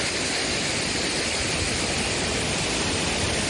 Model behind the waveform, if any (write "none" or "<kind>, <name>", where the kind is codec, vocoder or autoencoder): none